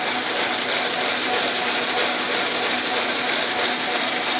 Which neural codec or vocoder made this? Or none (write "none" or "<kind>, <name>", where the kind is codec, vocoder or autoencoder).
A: none